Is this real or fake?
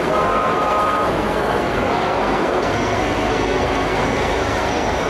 fake